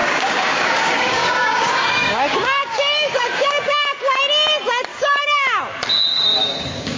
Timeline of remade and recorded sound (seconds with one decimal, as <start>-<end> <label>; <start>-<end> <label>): 0.0-4.2 remade; 4.2-4.9 recorded; 4.9-5.6 remade; 5.6-6.1 recorded; 6.1-7.0 remade